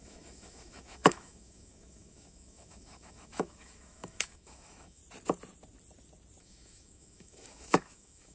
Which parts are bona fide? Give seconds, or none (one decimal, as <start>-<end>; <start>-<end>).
5.0-6.4